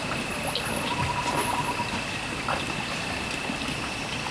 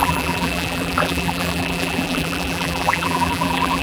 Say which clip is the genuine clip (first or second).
first